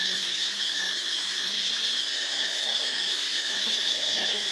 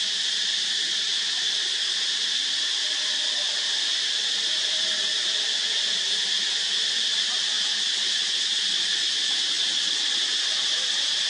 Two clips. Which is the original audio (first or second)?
second